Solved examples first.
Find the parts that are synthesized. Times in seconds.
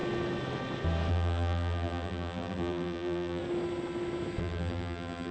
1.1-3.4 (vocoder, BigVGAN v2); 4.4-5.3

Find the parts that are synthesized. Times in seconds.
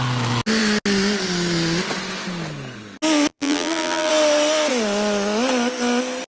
3.3-4.1 (vocoder, BigVGAN v2)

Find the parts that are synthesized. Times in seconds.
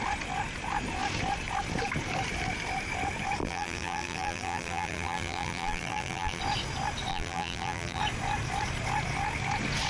3.4-6.4 (vocoder, BigVGAN v2); 7.1-8.0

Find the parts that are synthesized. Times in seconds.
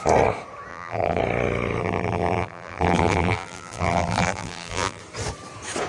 0.7-1.2 (vocoder, BigVGAN v2); 1.8-5.0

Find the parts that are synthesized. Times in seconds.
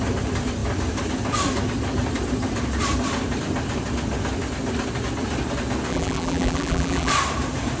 5.9-7.1 (vocoder, BigVGAN v2)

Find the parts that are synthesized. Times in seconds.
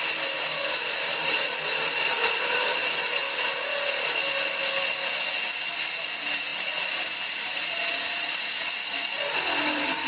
0.6-2.8 (vocoder, BigVGAN v2); 6.5-7.9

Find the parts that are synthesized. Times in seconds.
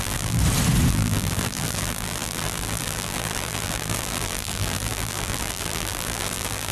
0.0-0.4 (vocoder, BigVGAN v2); 0.9-6.7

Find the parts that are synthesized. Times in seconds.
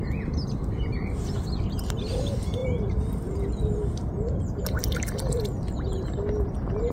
none